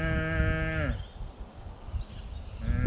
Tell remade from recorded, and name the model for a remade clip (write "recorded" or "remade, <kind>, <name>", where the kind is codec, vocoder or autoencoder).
recorded